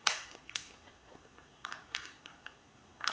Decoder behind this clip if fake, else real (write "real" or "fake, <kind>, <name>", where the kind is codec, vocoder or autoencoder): fake, codec, SNAC